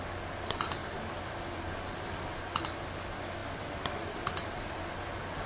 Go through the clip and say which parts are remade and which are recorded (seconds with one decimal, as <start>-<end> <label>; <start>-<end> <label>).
0.0-5.5 recorded